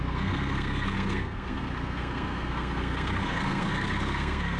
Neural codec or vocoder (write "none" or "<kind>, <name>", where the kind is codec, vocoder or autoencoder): codec, SNAC